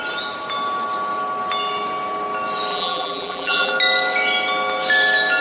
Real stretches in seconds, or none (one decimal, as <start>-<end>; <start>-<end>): 0.0-2.7; 3.7-5.4